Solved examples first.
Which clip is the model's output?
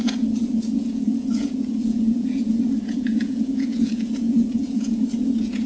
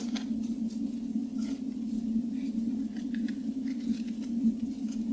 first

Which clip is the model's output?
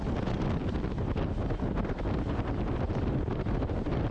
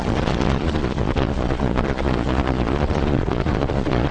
second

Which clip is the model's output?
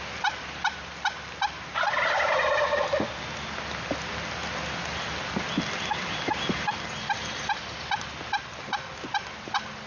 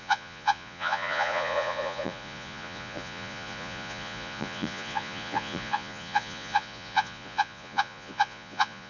second